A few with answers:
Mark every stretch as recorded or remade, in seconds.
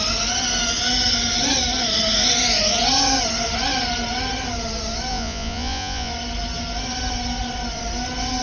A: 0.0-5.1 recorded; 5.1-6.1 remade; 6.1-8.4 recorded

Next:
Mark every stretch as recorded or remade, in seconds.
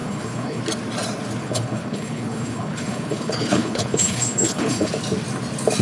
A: 0.0-0.6 remade; 0.6-1.4 recorded; 1.4-4.9 remade; 4.9-5.8 recorded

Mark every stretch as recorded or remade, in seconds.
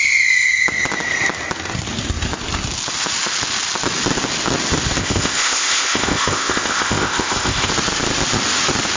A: 0.0-5.0 recorded; 5.0-7.7 remade; 7.7-9.0 recorded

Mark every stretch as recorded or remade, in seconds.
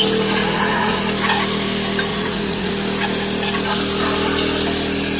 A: 0.0-0.4 recorded; 0.4-1.0 remade; 1.0-2.1 recorded; 2.1-2.7 remade; 2.7-5.2 recorded